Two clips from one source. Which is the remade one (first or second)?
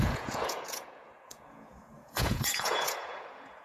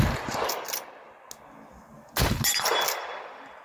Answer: first